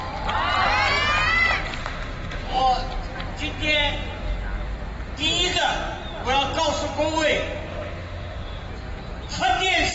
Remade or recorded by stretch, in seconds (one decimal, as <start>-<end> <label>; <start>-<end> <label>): 0.0-1.8 recorded; 1.8-2.6 remade; 2.6-7.7 recorded; 7.7-8.7 remade; 8.7-9.9 recorded